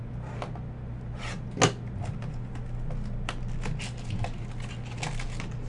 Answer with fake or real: real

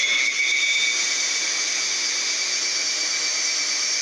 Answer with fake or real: real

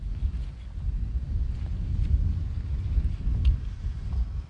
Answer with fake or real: real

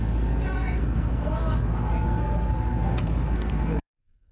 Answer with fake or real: fake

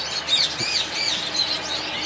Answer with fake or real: real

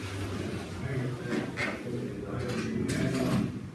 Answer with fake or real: real